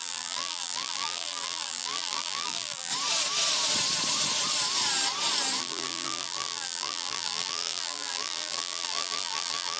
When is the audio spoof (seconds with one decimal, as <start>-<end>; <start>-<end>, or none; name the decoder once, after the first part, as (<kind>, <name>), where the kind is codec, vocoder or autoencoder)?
0.0-2.9 (vocoder, BigVGAN v2); 5.6-9.8